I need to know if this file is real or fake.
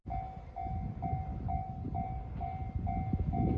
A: real